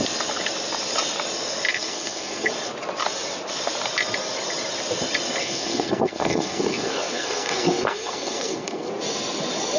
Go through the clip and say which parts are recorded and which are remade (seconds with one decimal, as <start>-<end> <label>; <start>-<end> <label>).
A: 0.0-1.7 recorded; 1.7-2.5 remade; 2.5-5.4 recorded; 5.4-8.9 remade; 8.9-9.8 recorded